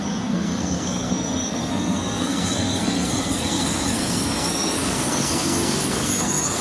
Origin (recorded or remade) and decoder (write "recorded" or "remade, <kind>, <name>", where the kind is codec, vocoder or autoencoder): remade, codec, SNAC